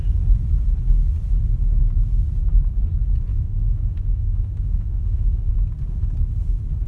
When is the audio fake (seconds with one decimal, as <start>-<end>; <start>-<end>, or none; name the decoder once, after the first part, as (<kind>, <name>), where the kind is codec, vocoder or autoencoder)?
3.3-5.5 (autoencoder, DAC-VAE)